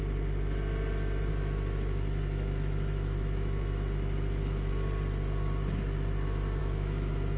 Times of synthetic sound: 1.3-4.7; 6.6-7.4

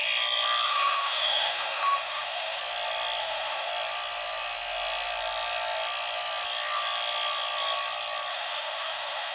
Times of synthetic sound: 0.7-2.6; 3.2-3.7; 8.3-9.3

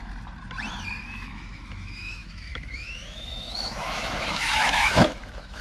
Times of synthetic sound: 1.0-5.6

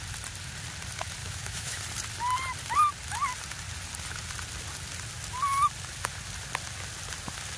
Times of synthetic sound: 1.2-1.8

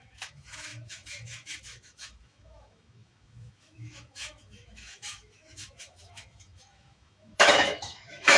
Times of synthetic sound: 0.0-8.4

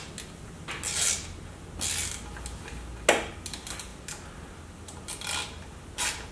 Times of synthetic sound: none

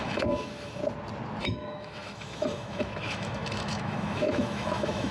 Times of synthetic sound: 0.0-0.8; 1.4-5.1

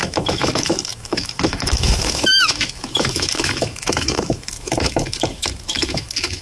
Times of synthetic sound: 0.0-6.4